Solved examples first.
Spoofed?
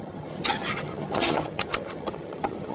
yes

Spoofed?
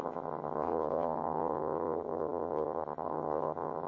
yes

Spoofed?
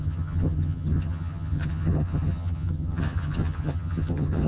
yes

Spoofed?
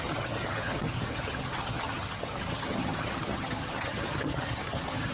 yes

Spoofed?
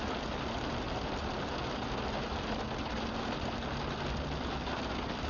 no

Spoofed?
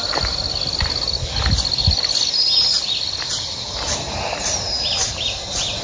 no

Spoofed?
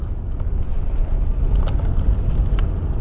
no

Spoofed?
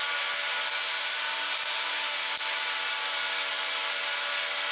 no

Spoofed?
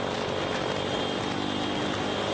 no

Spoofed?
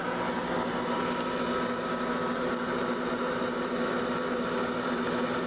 no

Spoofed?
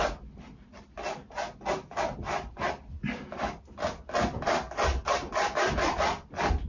no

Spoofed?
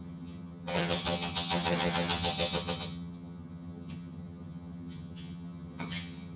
yes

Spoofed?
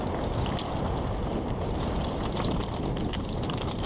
no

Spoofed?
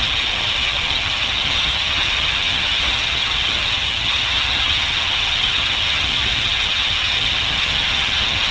yes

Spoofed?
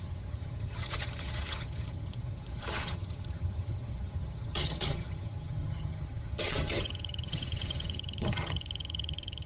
yes